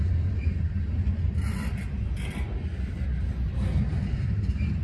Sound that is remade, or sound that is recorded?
recorded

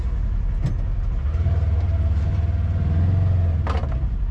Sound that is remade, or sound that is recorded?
recorded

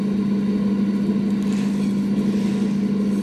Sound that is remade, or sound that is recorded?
recorded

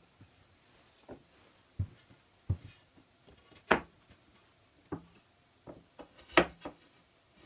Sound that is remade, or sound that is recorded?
recorded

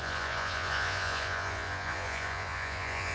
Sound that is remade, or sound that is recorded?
remade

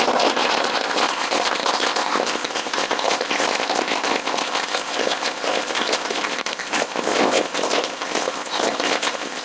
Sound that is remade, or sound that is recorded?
remade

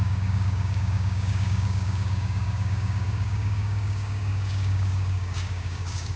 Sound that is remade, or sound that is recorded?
remade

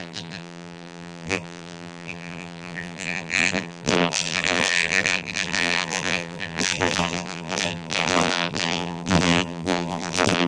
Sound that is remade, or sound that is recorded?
remade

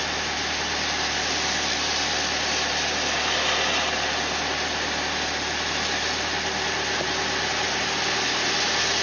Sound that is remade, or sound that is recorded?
recorded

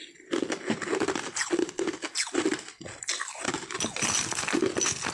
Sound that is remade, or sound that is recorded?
recorded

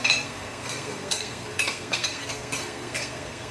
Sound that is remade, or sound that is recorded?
remade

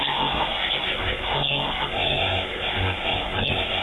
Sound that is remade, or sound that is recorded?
remade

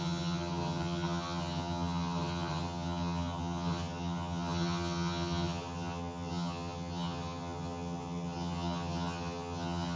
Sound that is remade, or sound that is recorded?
remade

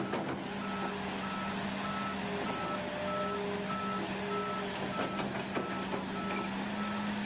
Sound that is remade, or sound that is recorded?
recorded